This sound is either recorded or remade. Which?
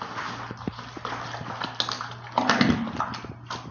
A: recorded